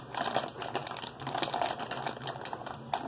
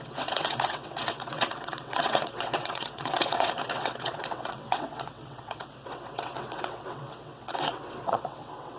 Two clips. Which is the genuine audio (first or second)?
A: first